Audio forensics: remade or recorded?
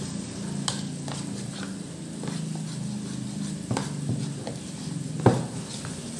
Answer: recorded